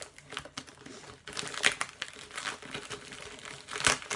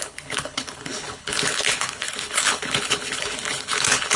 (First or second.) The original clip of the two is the first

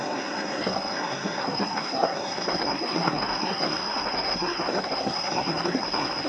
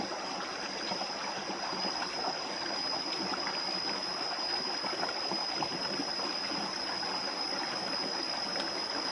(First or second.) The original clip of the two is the second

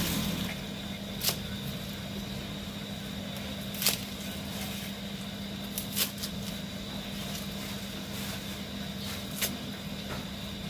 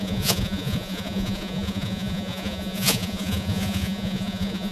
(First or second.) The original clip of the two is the first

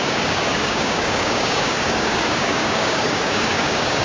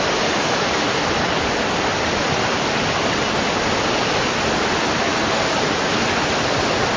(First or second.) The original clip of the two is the second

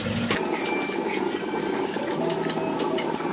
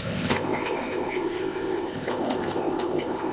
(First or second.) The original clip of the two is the first